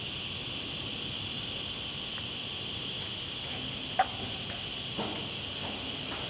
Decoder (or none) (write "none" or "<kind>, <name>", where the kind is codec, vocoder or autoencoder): none